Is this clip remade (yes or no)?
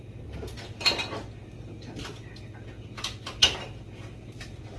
no